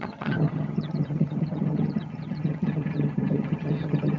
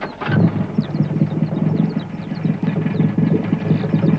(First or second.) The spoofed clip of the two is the first